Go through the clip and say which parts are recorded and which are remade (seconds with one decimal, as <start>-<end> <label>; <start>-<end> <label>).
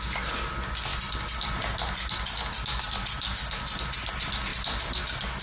0.0-5.4 recorded